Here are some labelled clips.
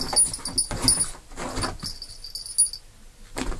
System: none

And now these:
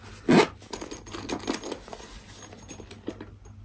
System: none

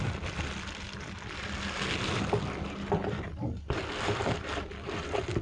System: none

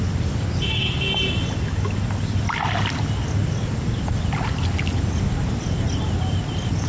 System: none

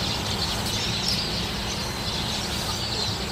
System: none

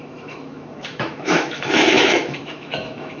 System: autoencoder, DAC-VAE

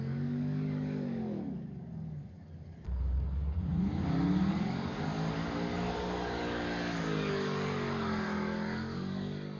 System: codec, DAC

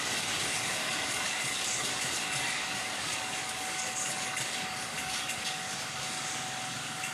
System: codec, DAC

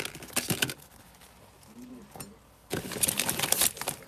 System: none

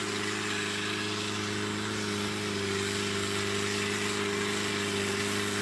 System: none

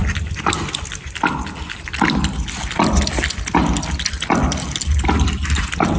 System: none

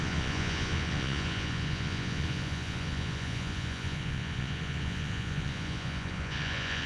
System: vocoder, Vocos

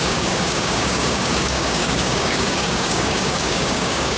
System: codec, DAC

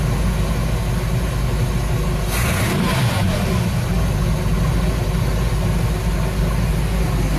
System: none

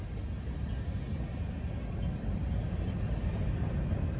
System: none